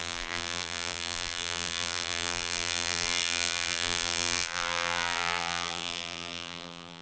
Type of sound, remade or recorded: remade